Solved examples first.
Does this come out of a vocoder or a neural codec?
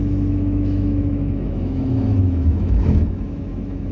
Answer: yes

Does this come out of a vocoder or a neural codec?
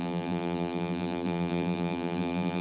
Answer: yes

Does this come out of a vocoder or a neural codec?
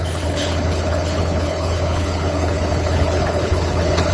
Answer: yes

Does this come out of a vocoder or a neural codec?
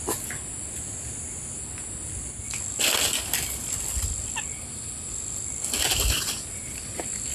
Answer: no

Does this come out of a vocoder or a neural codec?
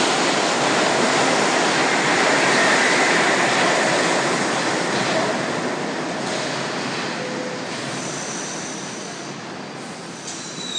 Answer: no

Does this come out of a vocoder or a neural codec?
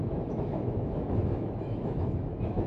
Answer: yes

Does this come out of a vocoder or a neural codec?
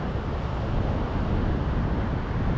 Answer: no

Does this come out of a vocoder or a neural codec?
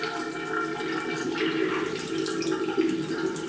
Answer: no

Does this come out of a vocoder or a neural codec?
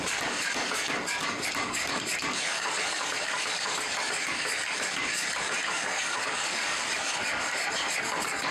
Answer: yes